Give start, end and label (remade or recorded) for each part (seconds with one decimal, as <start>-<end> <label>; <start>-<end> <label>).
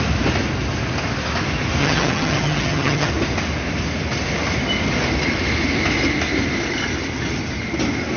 0.0-1.8 recorded; 1.8-3.1 remade; 3.1-8.2 recorded